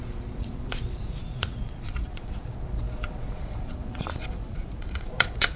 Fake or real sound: fake